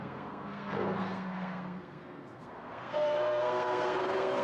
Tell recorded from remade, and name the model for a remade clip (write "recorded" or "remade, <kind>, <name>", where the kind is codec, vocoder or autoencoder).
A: remade, codec, SNAC